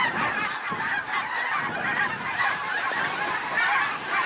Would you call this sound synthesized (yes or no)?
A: yes